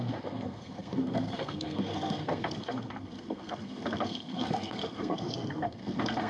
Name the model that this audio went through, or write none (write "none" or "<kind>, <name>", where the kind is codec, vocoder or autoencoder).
codec, SNAC